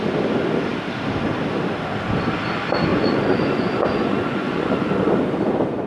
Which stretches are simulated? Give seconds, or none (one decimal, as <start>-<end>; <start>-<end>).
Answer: 2.9-5.1